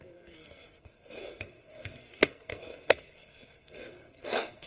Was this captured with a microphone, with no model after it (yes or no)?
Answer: no